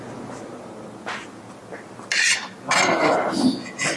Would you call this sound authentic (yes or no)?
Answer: yes